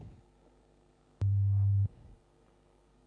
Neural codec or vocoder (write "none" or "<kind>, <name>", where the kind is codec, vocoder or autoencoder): codec, SNAC